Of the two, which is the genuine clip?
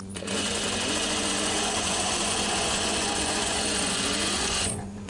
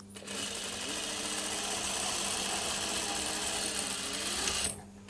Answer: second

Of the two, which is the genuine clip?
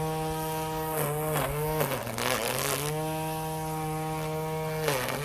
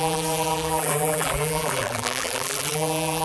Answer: first